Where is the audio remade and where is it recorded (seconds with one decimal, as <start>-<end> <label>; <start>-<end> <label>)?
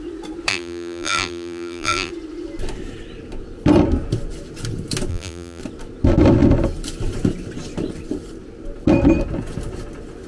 0.0-0.5 recorded; 0.5-2.1 remade; 2.1-5.1 recorded; 5.1-5.6 remade; 5.6-10.3 recorded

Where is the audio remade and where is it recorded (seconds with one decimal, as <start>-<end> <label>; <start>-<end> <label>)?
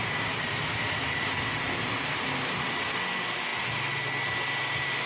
0.0-3.1 recorded; 3.1-3.5 remade; 3.5-4.6 recorded; 4.6-5.1 remade